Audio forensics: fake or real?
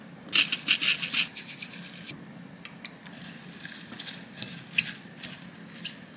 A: real